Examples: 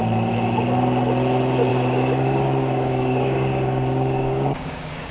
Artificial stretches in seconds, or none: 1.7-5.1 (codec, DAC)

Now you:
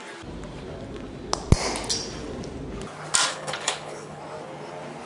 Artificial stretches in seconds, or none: 3.3-4.2 (codec, HILCodec)

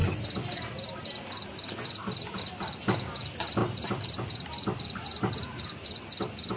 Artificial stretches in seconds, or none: 3.6-4.5 (vocoder, BigVGAN v2)

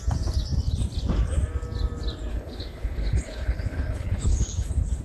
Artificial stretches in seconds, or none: 2.3-5.0 (codec, HILCodec)

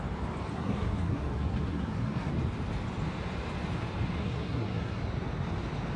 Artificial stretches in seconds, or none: 0.5-2.3 (codec, SNAC); 4.2-5.0